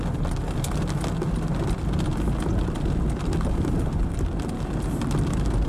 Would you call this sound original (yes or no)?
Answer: yes